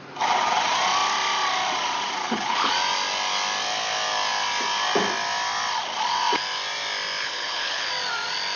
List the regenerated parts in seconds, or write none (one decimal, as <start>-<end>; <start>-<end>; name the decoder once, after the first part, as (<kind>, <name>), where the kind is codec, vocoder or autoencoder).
2.2-2.7 (codec, HILCodec); 7.2-7.9